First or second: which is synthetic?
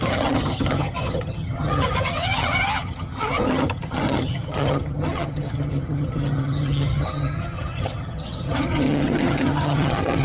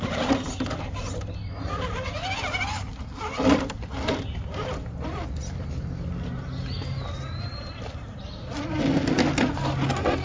first